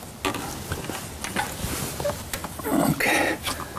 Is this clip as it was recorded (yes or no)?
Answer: yes